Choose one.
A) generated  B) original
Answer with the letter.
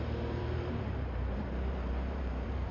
A